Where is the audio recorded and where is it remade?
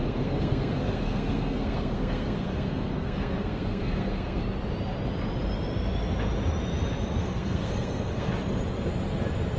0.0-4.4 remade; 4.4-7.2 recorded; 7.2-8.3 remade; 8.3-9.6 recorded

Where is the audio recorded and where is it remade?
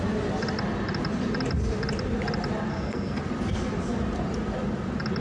0.0-2.7 recorded; 2.7-3.2 remade; 3.2-5.2 recorded